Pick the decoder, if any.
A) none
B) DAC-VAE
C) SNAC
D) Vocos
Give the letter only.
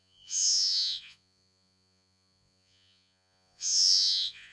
D